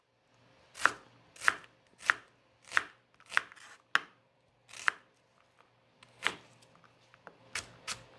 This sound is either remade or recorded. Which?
recorded